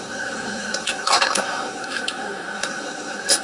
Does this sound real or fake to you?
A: fake